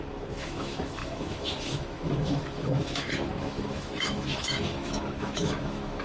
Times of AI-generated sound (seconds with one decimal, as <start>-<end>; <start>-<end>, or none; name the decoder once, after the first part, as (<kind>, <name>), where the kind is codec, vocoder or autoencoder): 0.0-6.0 (autoencoder, DAC-VAE)